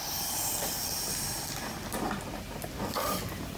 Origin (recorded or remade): recorded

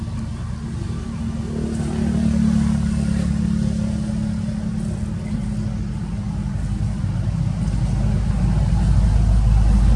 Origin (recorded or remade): recorded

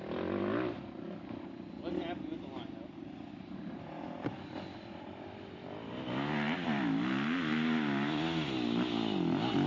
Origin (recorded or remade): recorded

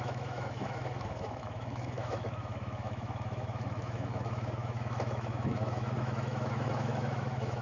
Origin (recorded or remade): remade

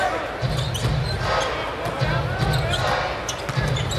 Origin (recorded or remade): recorded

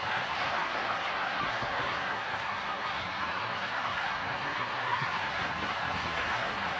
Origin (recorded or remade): remade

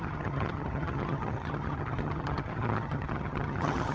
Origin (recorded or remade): remade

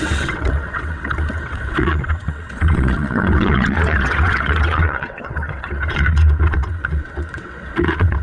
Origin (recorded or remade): remade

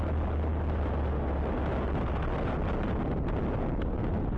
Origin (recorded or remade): recorded